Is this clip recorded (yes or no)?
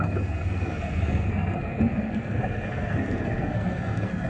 no